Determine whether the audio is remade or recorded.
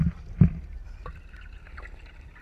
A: recorded